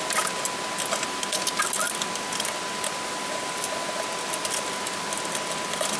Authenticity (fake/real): real